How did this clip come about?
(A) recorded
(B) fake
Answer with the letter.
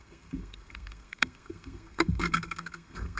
B